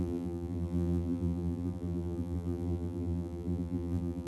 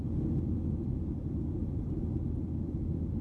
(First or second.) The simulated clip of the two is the first